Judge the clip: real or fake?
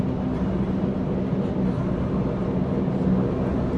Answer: real